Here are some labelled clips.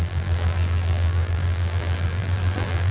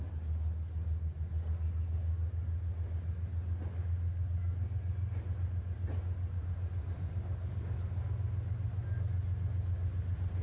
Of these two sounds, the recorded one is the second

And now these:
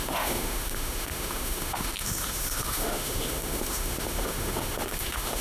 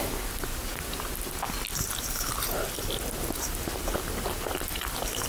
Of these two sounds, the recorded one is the second